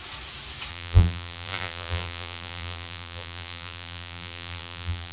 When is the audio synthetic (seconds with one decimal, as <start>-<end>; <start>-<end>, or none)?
0.7-5.1